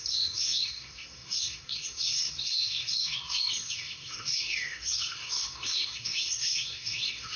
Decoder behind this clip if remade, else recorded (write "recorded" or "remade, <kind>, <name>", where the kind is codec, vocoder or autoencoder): remade, codec, SNAC